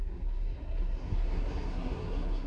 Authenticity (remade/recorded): remade